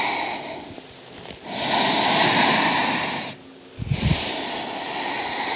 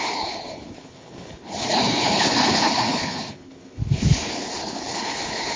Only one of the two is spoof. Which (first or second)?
second